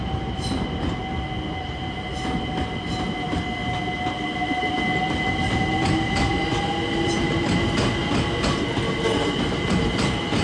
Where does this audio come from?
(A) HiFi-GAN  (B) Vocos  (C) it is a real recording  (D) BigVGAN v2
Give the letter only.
C